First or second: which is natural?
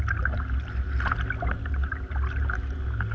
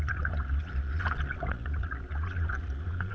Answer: first